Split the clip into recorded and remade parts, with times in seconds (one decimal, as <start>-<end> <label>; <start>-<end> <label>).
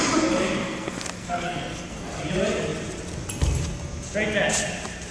0.0-0.6 recorded; 0.6-2.2 remade; 2.2-5.1 recorded